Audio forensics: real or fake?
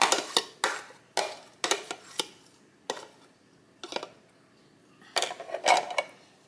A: real